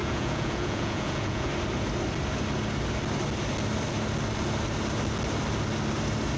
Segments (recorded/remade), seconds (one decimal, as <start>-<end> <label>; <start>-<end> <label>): 0.0-1.5 remade; 1.5-6.4 recorded